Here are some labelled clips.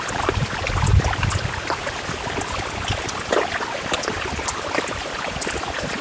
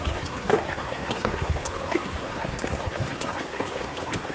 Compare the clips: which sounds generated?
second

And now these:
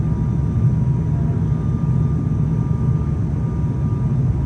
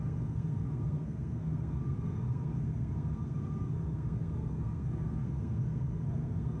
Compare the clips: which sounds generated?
second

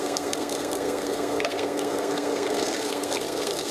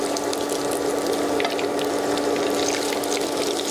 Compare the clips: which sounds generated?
first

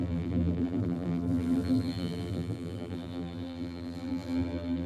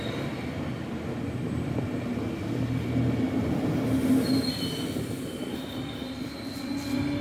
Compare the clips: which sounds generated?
first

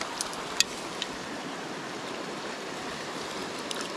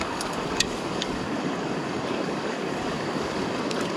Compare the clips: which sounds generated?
second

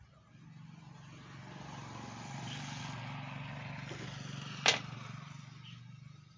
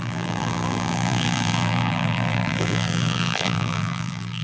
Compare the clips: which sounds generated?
second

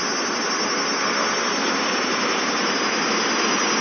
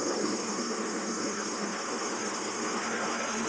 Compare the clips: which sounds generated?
second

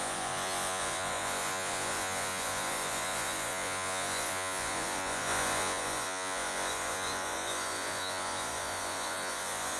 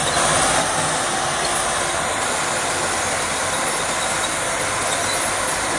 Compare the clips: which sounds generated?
first